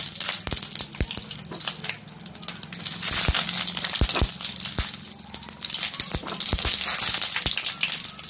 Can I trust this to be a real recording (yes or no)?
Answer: yes